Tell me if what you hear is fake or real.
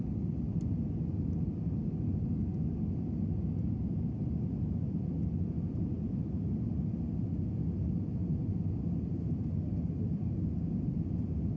real